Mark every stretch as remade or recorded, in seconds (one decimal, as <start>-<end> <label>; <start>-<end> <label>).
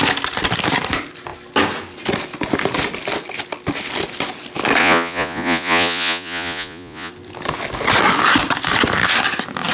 0.0-4.8 recorded; 4.8-7.1 remade; 7.1-9.7 recorded